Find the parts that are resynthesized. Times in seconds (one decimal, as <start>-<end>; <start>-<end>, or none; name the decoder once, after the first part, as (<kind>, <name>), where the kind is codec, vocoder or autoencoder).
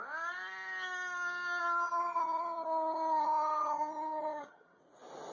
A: 1.6-4.8 (vocoder, HiFi-GAN)